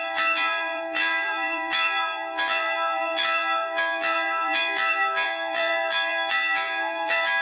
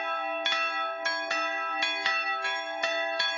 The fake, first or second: first